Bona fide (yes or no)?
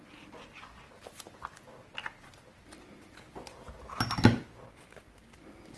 yes